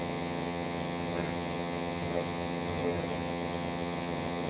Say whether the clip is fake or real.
fake